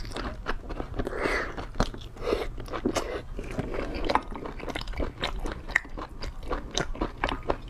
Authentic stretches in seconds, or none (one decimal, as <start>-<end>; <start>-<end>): 0.0-4.2; 7.3-7.7

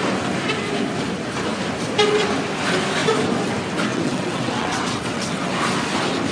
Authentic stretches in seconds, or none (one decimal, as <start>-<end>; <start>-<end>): 0.0-3.9; 5.5-6.3

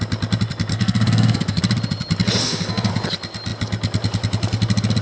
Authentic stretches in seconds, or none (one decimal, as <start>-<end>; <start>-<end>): 0.0-0.7; 1.6-2.4; 2.9-5.0

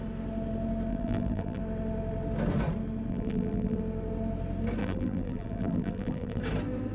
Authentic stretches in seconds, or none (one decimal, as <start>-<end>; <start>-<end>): 0.0-0.9; 1.6-3.1; 3.8-4.8; 6.4-6.9

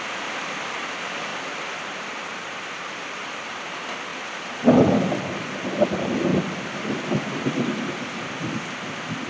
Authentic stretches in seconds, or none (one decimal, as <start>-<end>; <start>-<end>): 0.0-1.3; 3.3-6.3; 6.9-9.3

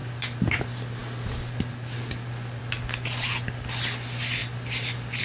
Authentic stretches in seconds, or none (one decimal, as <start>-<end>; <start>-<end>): 0.6-5.2